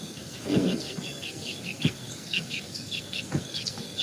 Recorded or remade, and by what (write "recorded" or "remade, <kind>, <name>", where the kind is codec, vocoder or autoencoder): remade, codec, SNAC